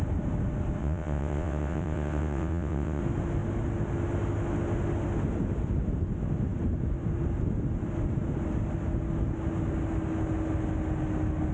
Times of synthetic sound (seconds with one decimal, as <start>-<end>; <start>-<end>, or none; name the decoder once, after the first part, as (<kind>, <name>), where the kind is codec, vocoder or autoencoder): 0.8-3.0 (vocoder, WaveNeXt)